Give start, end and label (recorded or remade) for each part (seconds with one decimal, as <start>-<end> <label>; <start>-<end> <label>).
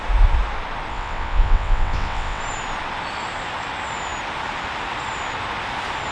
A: 0.0-0.9 recorded; 0.9-2.4 remade; 2.4-6.1 recorded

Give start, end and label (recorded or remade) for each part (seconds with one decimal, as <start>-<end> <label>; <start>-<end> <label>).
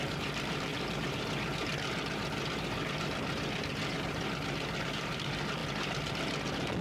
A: 0.0-0.7 remade; 0.7-4.8 recorded; 4.8-5.6 remade; 5.6-6.8 recorded